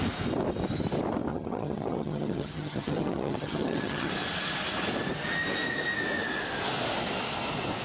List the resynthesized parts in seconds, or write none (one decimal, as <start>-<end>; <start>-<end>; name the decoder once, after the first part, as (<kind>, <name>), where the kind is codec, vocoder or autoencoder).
1.3-4.1 (vocoder, HiFi-GAN)